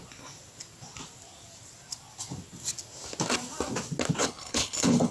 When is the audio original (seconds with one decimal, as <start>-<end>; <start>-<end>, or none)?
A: 0.0-4.2